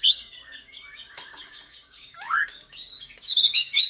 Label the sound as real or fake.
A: fake